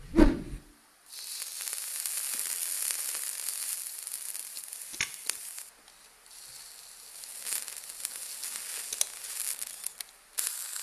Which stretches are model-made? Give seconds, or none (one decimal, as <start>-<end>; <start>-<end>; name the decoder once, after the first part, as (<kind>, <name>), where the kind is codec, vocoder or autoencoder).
none